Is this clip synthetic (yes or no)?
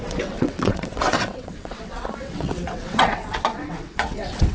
yes